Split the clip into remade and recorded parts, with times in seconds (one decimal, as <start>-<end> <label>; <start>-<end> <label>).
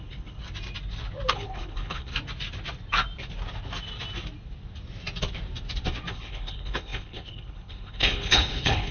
0.0-0.4 remade; 0.4-1.3 recorded; 1.3-2.1 remade; 2.1-6.1 recorded; 6.1-8.9 remade